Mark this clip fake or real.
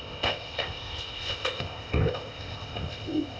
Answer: fake